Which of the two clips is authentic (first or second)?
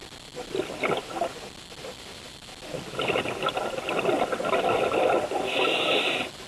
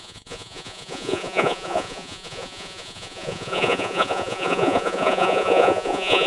first